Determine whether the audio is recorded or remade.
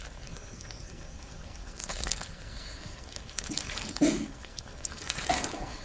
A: remade